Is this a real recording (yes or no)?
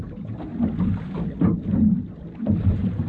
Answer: yes